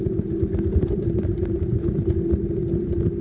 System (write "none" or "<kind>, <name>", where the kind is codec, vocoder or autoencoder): none